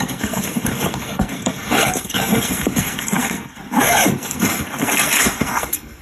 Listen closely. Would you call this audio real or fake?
fake